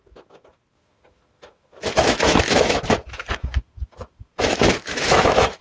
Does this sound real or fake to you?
fake